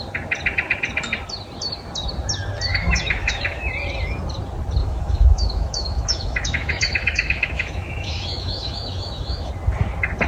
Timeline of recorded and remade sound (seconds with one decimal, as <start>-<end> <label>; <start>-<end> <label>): 0.0-2.7 recorded; 2.7-3.7 remade; 3.7-4.8 recorded; 4.8-9.5 remade; 9.5-10.3 recorded